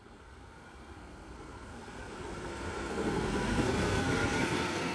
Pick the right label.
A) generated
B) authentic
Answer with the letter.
A